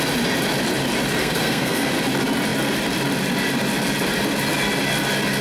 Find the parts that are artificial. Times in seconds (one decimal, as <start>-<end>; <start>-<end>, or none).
1.2-1.9